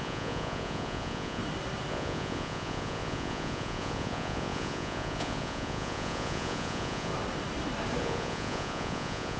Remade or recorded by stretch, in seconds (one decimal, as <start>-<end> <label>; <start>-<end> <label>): 0.0-1.4 remade; 1.4-1.9 recorded; 1.9-7.1 remade; 7.1-8.0 recorded; 8.0-9.4 remade